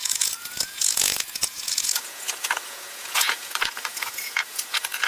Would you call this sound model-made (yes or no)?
yes